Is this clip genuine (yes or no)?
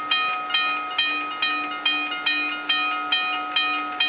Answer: yes